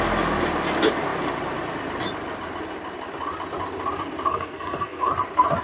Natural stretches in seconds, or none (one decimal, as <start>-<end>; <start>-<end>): 0.0-4.3; 5.1-5.6